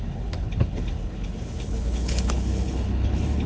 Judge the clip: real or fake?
fake